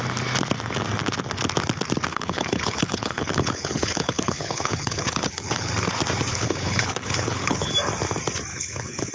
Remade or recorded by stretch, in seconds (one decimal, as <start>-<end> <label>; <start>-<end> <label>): 0.0-2.1 recorded; 2.1-5.7 remade; 5.7-6.3 recorded; 6.3-7.7 remade; 7.7-8.5 recorded; 8.5-9.1 remade